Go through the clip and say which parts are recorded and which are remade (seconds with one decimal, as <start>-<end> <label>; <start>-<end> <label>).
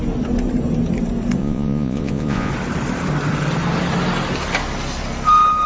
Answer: 0.0-1.4 recorded; 1.4-2.5 remade; 2.5-5.7 recorded